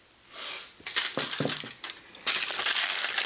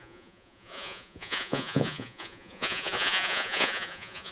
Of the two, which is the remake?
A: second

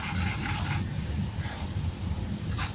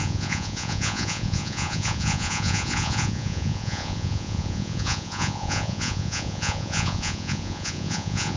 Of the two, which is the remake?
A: second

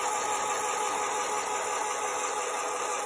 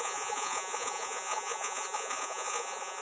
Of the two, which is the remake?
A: second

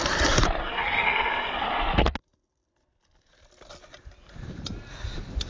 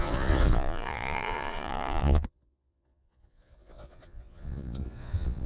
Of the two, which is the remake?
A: second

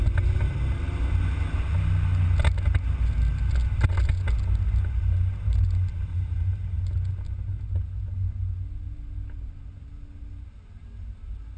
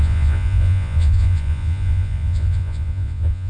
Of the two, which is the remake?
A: second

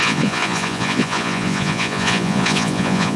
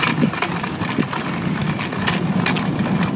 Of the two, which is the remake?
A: first